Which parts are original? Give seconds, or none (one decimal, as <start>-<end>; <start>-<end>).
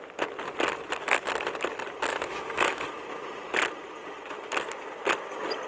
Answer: 0.0-2.1; 2.9-5.7